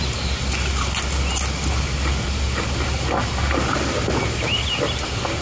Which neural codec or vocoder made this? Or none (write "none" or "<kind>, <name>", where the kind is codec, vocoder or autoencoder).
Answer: none